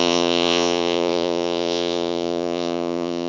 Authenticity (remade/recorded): remade